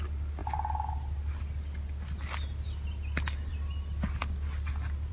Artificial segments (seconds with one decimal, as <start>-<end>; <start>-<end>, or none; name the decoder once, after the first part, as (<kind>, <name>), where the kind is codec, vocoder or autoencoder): none